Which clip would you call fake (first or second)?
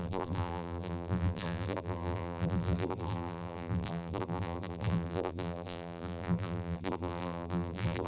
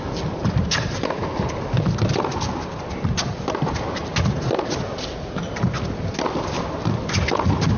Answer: first